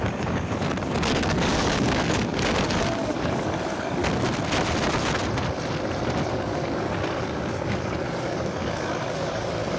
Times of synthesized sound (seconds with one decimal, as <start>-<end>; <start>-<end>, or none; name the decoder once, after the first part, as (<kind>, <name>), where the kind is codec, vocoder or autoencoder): 0.0-4.0 (codec, DAC); 6.3-9.8